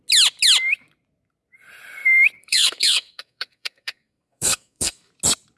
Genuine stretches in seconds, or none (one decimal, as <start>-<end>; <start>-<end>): 0.0-2.4; 5.1-5.6